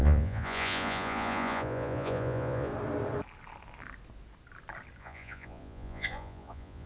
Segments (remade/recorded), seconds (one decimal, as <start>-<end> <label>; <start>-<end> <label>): 0.0-2.7 remade; 2.7-5.0 recorded; 5.0-6.9 remade